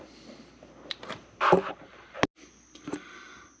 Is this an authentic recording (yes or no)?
yes